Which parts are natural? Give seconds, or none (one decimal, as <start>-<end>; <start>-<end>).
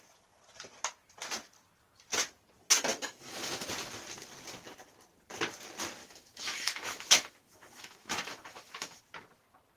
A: 0.0-2.9; 3.7-6.0; 9.0-9.8